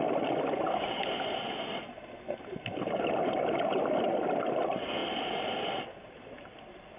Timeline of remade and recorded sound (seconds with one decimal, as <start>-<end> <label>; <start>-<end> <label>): 0.0-7.0 recorded